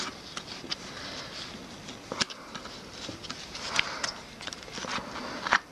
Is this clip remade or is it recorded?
recorded